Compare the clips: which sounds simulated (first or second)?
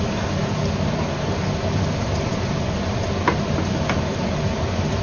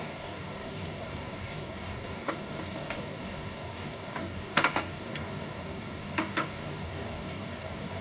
second